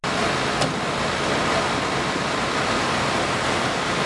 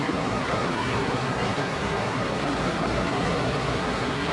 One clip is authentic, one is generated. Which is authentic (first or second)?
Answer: first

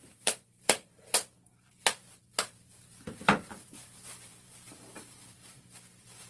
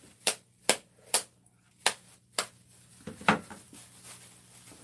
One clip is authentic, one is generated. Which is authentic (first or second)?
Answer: second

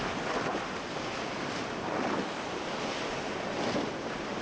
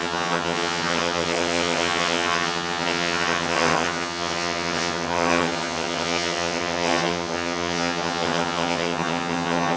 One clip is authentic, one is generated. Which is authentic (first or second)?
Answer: first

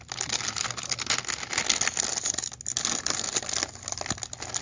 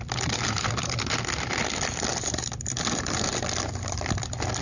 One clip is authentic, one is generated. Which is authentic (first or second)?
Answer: first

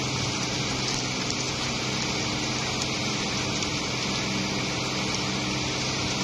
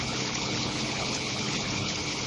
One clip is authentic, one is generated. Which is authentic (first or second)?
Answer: first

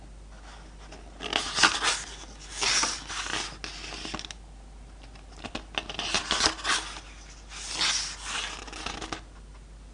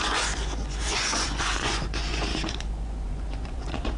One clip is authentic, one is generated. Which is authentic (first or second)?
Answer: first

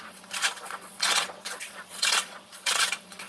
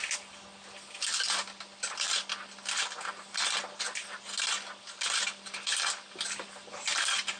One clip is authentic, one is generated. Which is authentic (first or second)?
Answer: second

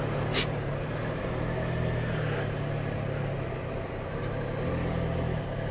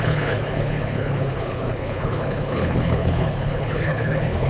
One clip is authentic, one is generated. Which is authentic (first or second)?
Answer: first